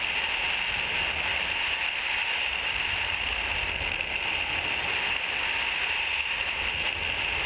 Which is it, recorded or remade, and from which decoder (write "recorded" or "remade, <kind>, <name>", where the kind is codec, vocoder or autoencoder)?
recorded